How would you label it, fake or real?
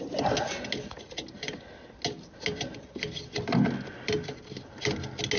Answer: real